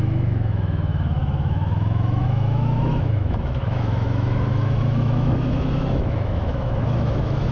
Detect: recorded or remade remade